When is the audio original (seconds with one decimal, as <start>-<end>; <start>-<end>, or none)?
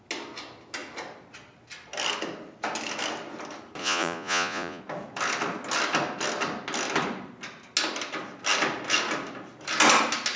0.0-3.8; 4.8-10.4